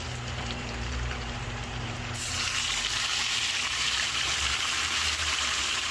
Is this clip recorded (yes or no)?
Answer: no